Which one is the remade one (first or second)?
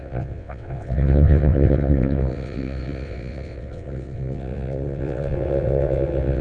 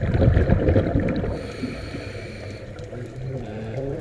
first